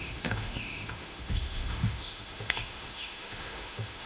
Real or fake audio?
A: fake